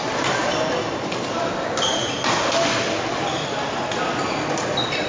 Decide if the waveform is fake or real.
real